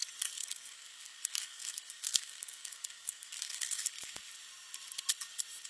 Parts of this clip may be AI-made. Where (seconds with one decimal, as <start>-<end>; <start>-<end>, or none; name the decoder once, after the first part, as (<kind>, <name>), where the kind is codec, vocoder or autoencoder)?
0.4-3.8 (codec, SNAC)